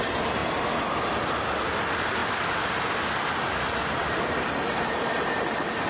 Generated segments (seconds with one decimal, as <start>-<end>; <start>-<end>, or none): none